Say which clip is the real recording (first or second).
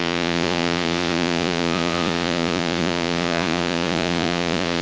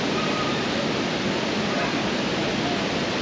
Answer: second